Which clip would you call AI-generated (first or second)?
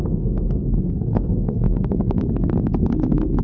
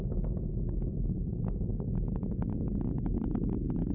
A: first